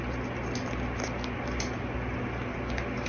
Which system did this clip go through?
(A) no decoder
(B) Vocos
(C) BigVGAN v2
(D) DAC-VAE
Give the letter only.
A